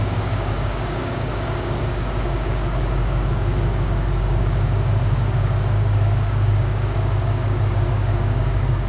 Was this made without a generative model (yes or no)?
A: no